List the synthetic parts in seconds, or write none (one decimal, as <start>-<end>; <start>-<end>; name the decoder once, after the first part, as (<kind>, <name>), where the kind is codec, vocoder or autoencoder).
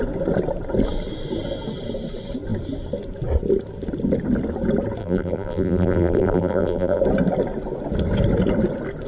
5.0-7.0 (vocoder, BigVGAN v2)